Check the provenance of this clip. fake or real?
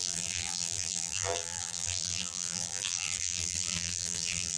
fake